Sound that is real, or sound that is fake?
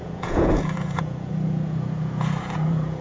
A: fake